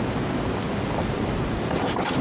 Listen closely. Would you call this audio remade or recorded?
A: recorded